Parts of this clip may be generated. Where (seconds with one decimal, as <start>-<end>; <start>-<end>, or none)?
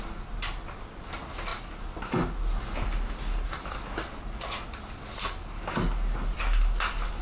none